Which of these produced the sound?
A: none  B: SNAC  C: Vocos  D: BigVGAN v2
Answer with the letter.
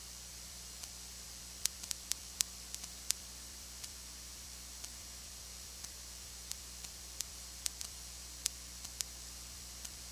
D